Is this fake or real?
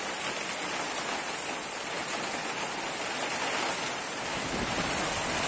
real